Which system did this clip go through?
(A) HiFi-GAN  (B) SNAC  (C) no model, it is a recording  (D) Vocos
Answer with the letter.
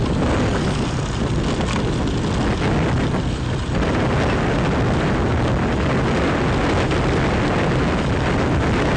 C